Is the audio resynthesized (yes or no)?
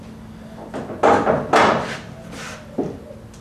no